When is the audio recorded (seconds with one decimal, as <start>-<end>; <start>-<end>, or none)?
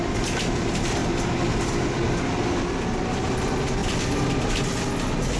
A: 0.0-3.8; 4.5-5.4